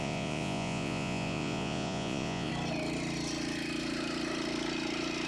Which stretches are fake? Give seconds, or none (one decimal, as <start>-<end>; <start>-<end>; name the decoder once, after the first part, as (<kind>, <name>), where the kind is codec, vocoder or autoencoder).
0.0-2.5 (vocoder, Vocos)